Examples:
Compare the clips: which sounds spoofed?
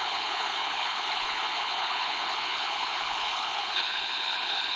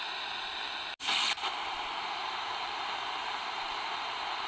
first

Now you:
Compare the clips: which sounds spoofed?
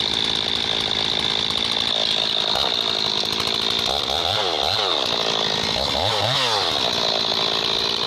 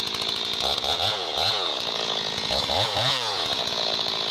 second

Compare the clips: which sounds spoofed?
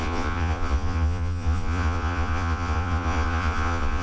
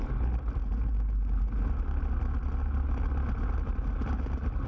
first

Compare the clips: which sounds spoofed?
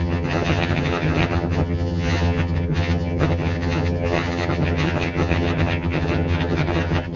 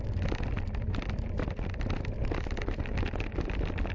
first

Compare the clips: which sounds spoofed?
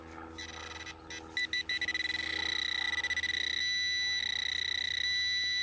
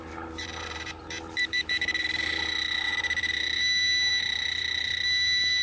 second